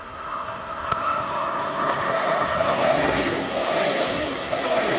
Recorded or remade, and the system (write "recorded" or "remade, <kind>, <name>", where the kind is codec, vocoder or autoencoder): remade, codec, SNAC